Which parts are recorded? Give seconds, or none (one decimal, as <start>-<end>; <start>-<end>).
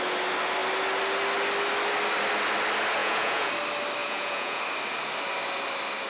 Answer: 0.0-3.0; 3.5-4.0; 4.6-6.1